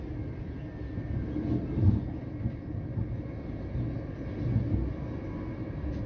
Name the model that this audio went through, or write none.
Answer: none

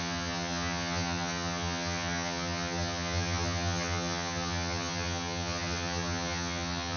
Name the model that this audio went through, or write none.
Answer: vocoder, HiFi-GAN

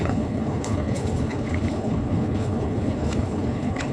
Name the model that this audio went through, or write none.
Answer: codec, HILCodec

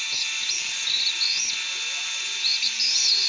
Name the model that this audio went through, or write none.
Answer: none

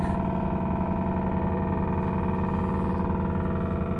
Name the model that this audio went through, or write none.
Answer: none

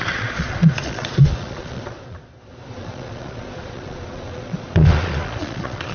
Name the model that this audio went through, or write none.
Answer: vocoder, Vocos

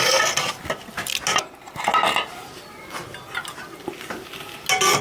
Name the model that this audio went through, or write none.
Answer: none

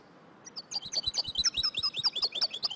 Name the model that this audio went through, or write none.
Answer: none